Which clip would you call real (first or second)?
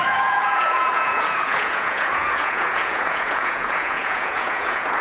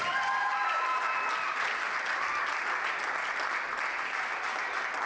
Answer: second